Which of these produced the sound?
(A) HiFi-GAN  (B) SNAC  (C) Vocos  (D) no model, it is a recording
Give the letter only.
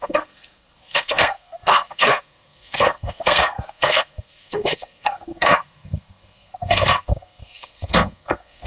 B